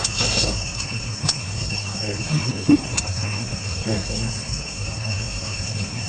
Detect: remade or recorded remade